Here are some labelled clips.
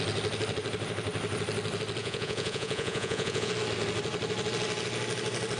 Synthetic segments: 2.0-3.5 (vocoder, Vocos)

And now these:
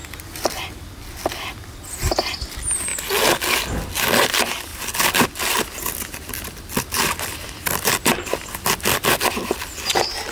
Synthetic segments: none